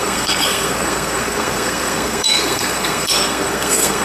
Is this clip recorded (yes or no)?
no